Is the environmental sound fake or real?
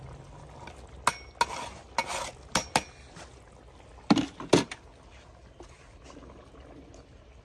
real